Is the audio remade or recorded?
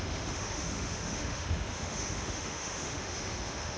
remade